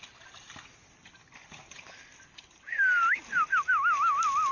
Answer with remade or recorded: recorded